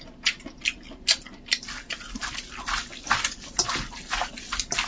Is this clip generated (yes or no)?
no